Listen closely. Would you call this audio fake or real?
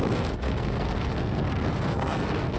fake